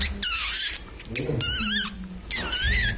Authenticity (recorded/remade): recorded